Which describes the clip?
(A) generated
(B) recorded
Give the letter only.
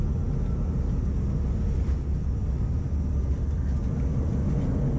B